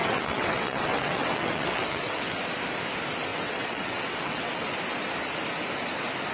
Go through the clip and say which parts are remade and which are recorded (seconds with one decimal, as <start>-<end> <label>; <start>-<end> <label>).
0.0-2.4 remade; 2.4-3.3 recorded; 3.3-4.5 remade; 4.5-6.3 recorded